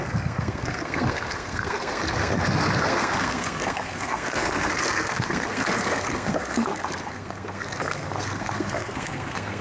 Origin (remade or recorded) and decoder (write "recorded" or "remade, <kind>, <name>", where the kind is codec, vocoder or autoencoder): remade, codec, SNAC